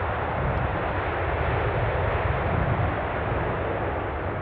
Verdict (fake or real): real